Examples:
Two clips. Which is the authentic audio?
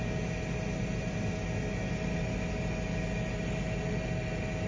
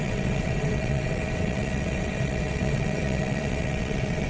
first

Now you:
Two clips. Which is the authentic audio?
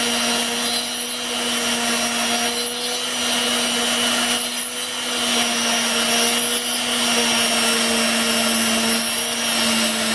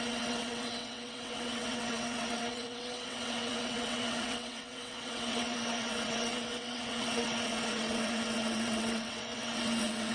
first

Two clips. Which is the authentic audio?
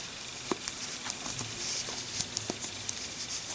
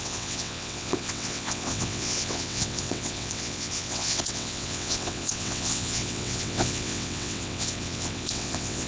first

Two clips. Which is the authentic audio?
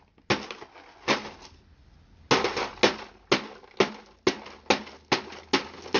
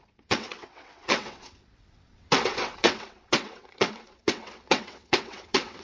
first